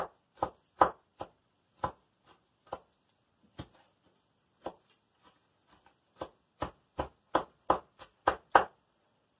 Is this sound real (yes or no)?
yes